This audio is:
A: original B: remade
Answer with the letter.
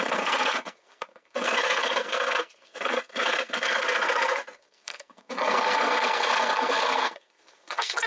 B